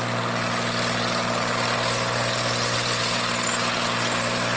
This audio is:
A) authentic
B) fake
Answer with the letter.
A